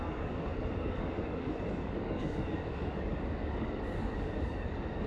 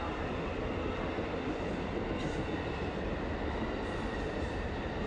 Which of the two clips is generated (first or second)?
first